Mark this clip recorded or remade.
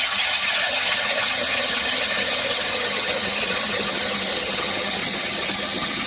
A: remade